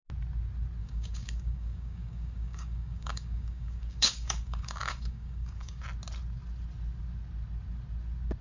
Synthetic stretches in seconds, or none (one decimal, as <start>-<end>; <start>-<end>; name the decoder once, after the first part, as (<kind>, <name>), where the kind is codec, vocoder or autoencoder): 0.8-5.8 (codec, DAC)